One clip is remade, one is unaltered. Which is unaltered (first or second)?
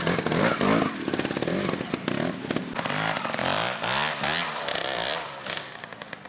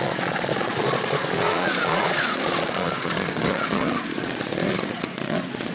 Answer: first